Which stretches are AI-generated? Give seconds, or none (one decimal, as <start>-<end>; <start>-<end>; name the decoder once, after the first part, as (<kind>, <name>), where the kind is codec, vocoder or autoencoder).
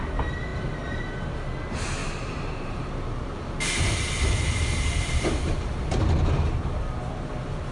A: 2.0-5.5 (vocoder, BigVGAN v2)